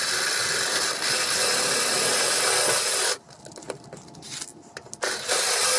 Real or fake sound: real